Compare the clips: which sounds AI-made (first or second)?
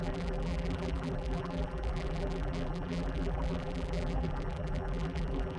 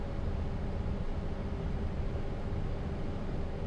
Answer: first